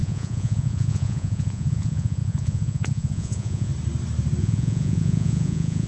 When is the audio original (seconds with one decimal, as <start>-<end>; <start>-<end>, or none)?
3.7-4.4

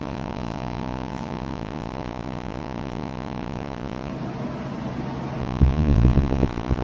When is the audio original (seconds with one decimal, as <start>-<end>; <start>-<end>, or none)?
4.1-5.4

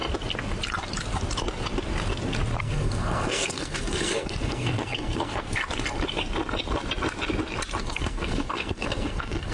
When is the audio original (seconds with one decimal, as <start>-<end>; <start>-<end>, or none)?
0.0-2.6; 5.6-7.8

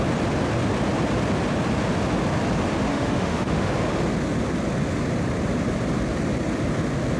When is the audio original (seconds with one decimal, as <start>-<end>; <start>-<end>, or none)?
0.0-2.9; 3.7-7.2

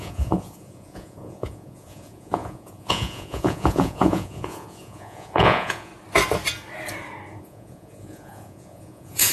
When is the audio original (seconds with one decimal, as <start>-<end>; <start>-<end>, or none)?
5.9-7.4

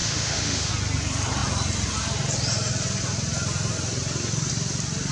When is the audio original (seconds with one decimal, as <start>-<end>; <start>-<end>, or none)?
0.7-5.1

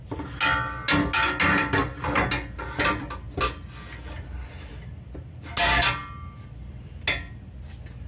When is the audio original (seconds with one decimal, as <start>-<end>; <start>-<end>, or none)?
0.0-8.1